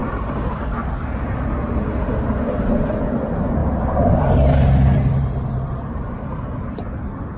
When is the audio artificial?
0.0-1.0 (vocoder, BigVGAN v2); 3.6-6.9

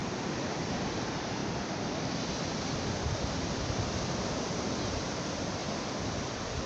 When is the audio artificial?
0.0-0.6 (vocoder, BigVGAN v2); 5.6-6.7

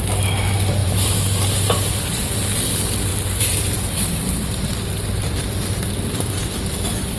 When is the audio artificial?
0.8-2.4 (vocoder, BigVGAN v2); 3.1-4.8

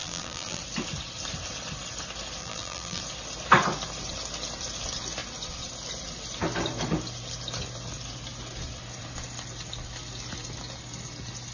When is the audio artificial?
0.0-0.6 (vocoder, BigVGAN v2); 2.4-3.0